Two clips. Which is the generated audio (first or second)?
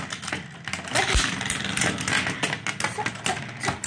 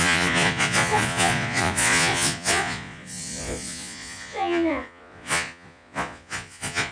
second